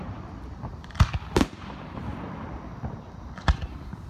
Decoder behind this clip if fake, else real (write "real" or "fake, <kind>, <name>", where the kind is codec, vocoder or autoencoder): fake, vocoder, BigVGAN v2